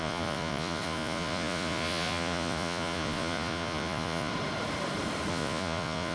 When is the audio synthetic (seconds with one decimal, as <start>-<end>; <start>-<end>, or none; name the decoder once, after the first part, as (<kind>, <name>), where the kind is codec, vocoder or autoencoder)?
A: 0.0-4.3 (vocoder, Vocos); 5.3-6.1

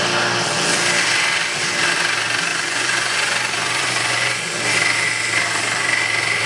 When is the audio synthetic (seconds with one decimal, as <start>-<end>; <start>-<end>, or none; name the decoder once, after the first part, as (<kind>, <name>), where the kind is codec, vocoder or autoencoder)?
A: 2.5-4.6 (vocoder, Vocos)

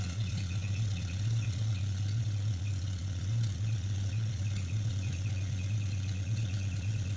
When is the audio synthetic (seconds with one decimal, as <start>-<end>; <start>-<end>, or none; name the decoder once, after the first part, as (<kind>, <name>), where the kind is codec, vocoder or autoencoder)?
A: 0.0-7.2 (vocoder, Vocos)

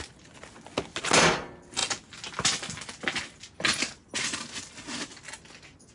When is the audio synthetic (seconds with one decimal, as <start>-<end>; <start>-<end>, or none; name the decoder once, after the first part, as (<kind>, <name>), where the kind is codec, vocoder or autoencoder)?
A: none